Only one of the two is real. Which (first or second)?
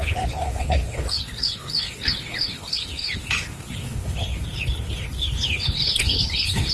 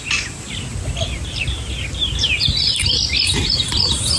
second